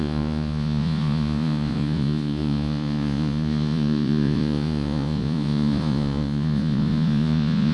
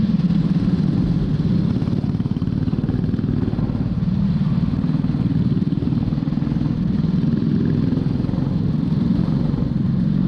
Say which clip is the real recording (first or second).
second